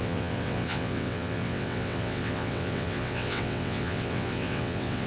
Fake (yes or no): yes